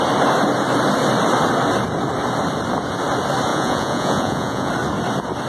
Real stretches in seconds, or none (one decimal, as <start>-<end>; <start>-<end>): 0.0-3.5; 4.7-5.5